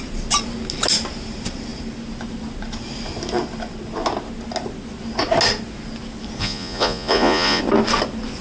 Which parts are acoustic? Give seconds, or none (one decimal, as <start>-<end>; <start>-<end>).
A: 0.0-6.4; 7.6-8.4